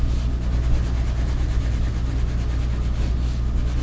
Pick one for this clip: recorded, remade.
recorded